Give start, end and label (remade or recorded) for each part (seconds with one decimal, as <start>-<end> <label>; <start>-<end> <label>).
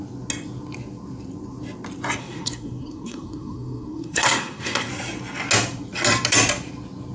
0.0-2.2 recorded; 2.2-4.9 remade; 4.9-7.1 recorded